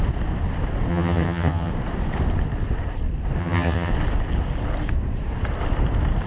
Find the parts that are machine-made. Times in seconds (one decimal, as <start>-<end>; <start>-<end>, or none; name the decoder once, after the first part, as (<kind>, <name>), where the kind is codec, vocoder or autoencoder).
0.9-1.7 (vocoder, HiFi-GAN); 3.4-3.9